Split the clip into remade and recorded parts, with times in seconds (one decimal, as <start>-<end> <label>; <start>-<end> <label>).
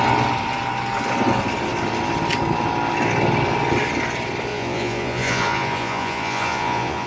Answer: 0.0-4.5 recorded; 4.5-7.1 remade